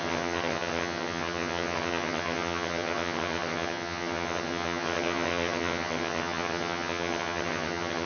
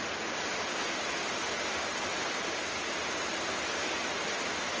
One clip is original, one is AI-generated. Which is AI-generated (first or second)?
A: first